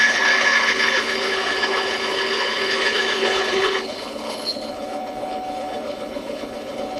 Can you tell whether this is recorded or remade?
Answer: remade